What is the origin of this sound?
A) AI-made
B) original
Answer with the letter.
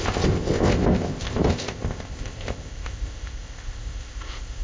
A